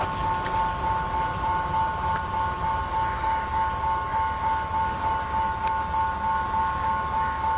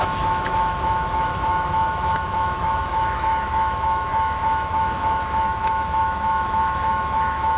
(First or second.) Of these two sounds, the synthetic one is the second